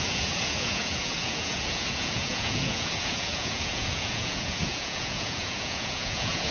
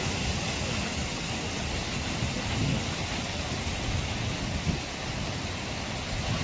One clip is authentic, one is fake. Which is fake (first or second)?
first